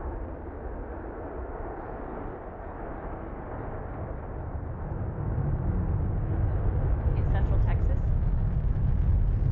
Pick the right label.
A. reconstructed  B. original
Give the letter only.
B